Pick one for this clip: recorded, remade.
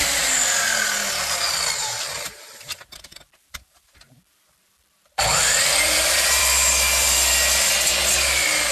remade